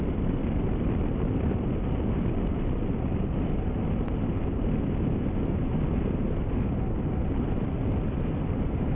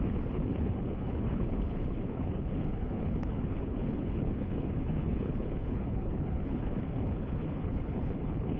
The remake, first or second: second